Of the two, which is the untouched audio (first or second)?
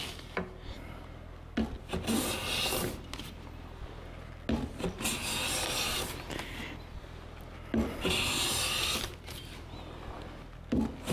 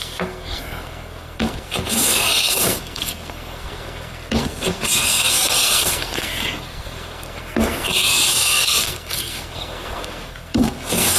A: first